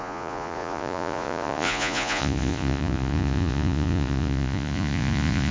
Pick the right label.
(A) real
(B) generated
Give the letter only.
B